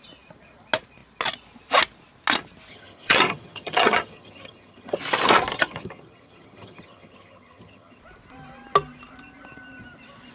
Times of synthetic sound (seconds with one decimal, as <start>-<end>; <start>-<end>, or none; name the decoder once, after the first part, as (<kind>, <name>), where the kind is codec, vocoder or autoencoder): 2.7-5.0 (vocoder, HiFi-GAN); 5.5-8.0